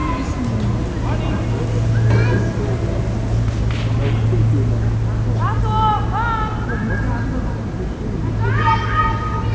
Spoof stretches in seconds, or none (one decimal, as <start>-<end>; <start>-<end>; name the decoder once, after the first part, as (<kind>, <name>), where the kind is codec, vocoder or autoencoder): none